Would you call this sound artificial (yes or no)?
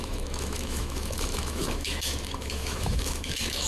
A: yes